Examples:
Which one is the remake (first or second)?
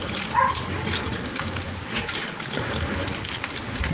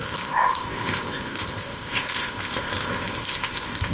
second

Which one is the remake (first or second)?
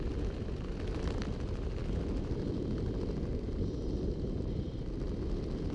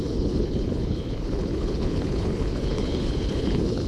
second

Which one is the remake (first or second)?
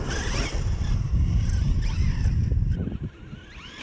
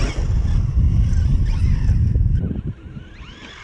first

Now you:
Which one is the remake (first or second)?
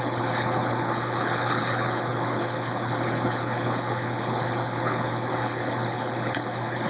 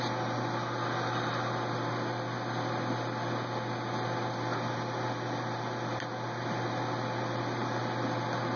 first